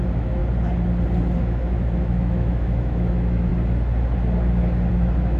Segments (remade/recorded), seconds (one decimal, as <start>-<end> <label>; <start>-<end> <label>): 0.0-0.4 remade; 0.4-1.4 recorded; 1.4-3.5 remade; 3.5-4.9 recorded; 4.9-5.4 remade